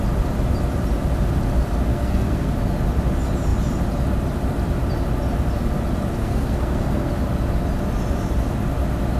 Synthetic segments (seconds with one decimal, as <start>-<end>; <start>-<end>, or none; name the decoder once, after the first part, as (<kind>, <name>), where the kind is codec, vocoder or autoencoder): 1.9-2.5 (codec, SNAC); 6.2-7.1

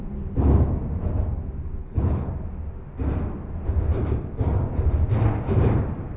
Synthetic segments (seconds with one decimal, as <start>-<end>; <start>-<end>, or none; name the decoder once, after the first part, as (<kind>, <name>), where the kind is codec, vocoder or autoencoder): 1.8-2.3 (codec, HILCodec)

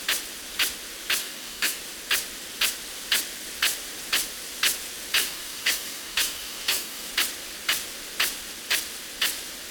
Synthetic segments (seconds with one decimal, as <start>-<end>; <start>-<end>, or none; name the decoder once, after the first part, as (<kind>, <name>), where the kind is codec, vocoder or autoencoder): 1.2-1.8 (codec, DAC); 5.2-7.1

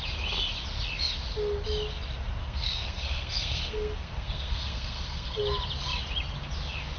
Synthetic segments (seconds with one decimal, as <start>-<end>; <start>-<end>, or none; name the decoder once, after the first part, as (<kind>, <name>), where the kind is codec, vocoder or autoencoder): 2.4-5.4 (codec, SNAC)

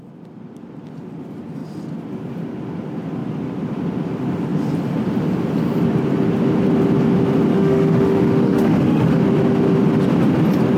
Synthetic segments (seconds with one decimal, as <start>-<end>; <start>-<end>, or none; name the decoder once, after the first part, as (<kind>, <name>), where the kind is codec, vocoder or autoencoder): 7.5-9.2 (autoencoder, DAC-VAE)

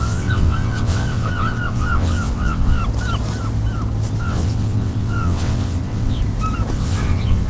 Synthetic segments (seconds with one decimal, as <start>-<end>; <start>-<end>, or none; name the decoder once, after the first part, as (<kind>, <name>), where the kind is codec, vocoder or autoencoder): 0.0-2.8 (vocoder, WaveNeXt); 4.2-6.2; 6.7-7.5

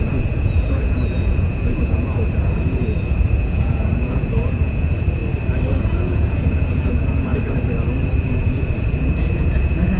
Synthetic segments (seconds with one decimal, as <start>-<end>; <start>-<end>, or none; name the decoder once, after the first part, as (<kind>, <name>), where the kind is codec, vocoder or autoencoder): 0.0-5.2 (vocoder, Vocos); 5.8-7.3; 8.2-10.0

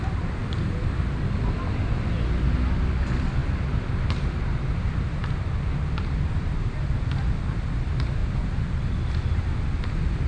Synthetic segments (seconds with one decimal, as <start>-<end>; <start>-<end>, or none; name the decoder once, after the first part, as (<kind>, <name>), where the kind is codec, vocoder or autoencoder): none